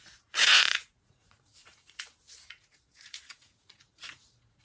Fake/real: fake